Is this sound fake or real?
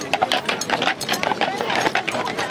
real